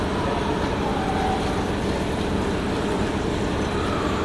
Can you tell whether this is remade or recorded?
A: remade